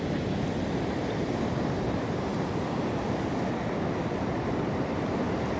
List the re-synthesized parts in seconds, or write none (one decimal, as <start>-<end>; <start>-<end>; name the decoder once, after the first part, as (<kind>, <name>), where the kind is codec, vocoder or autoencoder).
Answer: none